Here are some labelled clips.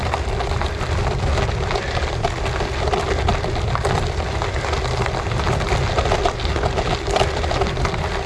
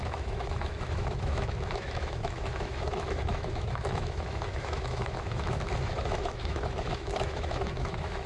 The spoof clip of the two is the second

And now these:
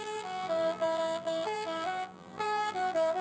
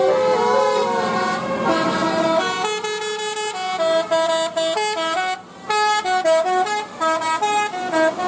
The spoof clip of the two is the first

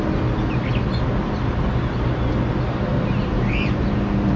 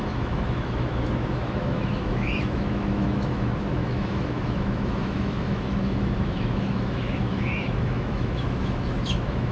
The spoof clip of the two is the second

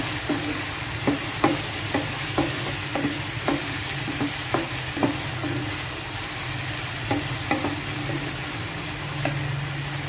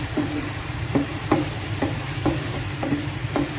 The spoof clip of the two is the second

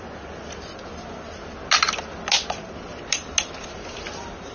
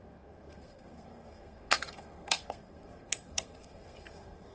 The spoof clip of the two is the second